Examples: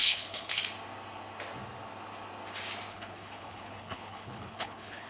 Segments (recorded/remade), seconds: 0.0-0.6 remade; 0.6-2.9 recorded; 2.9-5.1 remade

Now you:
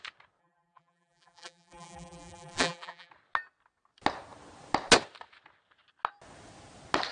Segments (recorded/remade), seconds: 0.0-0.4 recorded; 0.4-3.1 remade; 3.1-7.1 recorded

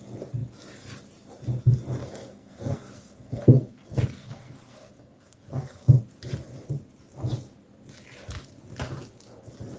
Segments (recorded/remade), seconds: 0.0-2.0 recorded; 2.0-6.0 remade; 6.0-9.8 recorded

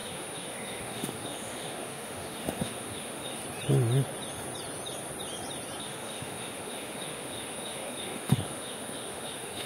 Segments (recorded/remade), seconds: 0.0-3.4 remade; 3.4-5.8 recorded; 5.8-9.7 remade

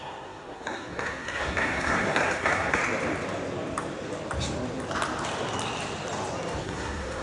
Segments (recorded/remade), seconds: 0.0-2.8 remade; 2.8-6.6 recorded; 6.6-7.2 remade

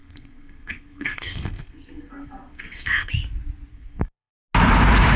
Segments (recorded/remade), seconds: 0.0-3.1 remade; 3.1-3.7 recorded; 3.7-4.3 remade; 4.3-5.2 recorded

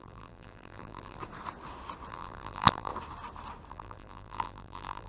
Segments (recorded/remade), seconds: 0.0-1.2 remade; 1.2-2.1 recorded; 2.1-2.9 remade; 2.9-3.7 recorded; 3.7-5.1 remade

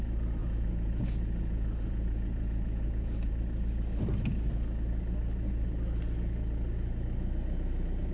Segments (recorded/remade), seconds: 0.0-0.4 recorded; 0.4-3.3 remade; 3.3-8.1 recorded